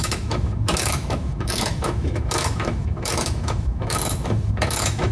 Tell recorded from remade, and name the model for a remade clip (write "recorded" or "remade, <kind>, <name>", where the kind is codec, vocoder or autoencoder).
remade, autoencoder, DAC-VAE